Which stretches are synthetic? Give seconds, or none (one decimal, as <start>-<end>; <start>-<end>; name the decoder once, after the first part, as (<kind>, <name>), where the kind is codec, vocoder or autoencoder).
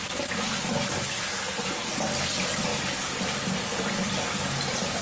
none